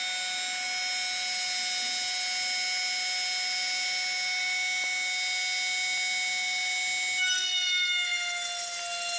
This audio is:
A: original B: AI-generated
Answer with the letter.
A